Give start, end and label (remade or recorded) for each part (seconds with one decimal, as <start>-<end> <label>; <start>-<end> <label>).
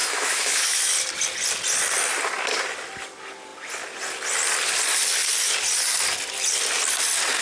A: 0.0-0.8 remade; 0.8-7.4 recorded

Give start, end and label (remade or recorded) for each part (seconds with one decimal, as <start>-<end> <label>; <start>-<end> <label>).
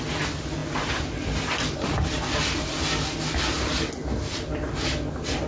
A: 0.0-5.5 recorded